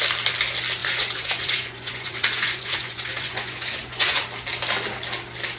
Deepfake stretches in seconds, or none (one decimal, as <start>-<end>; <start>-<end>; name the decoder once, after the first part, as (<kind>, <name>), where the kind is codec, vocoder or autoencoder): 0.8-4.2 (vocoder, Vocos)